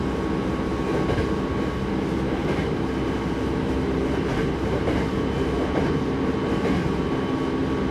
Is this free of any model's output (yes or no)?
yes